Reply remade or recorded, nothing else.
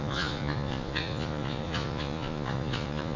remade